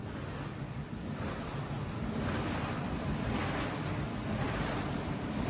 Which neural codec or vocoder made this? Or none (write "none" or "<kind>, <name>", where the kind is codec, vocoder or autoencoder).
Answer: vocoder, BigVGAN v2